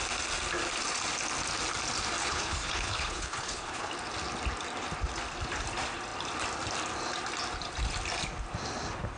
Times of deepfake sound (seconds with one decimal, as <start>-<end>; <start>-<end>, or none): 2.2-3.9